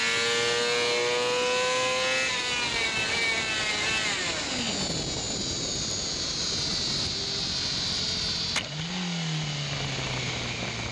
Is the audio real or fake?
real